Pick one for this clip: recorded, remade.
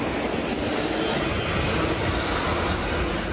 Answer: recorded